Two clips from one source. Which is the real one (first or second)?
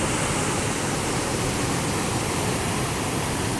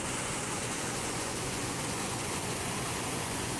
first